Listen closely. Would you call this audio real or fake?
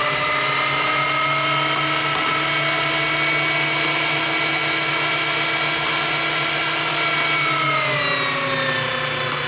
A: real